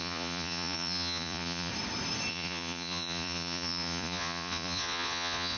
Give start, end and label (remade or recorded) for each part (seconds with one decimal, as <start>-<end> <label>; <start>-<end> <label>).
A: 0.0-1.7 remade; 1.7-2.3 recorded; 2.3-5.6 remade